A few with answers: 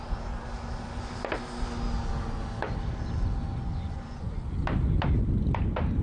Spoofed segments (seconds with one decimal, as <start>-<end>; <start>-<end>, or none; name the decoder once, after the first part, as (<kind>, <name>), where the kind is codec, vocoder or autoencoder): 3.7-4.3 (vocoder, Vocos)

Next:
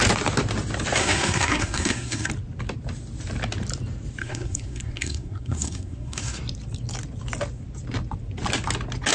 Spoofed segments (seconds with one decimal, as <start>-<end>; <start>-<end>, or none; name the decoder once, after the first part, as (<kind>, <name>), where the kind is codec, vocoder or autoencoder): 1.0-2.3 (codec, SNAC); 4.2-6.4

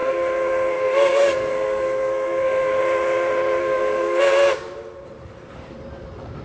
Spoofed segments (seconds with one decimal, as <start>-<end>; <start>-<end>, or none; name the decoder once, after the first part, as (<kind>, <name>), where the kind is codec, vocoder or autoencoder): 0.0-2.8 (codec, SNAC); 3.6-4.2

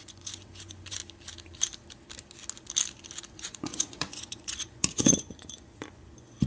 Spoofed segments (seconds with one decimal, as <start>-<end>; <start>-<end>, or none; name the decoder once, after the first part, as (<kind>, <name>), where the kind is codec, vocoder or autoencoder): 0.0-1.0 (vocoder, Vocos); 3.3-6.5